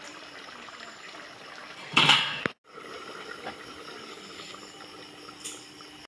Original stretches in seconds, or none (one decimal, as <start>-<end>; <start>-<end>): 0.0-1.8; 2.4-6.1